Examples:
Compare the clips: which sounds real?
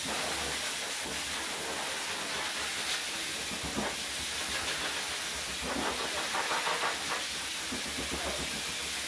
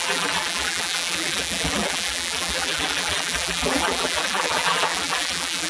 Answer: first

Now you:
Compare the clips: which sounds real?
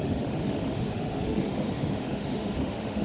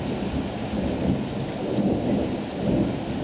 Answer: second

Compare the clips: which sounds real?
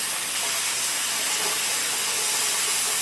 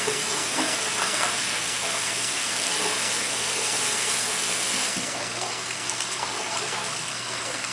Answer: first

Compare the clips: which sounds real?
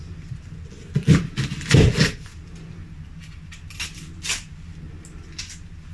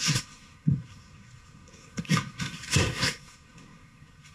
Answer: first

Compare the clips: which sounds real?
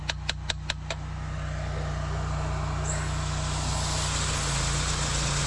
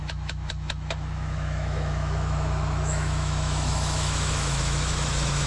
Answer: first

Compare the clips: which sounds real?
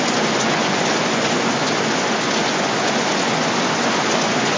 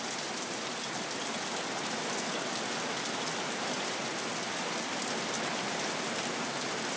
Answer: second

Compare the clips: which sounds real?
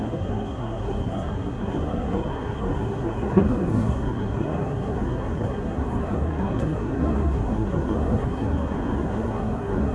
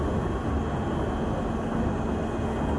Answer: second